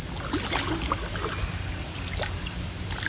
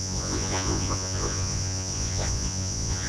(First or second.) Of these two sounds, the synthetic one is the second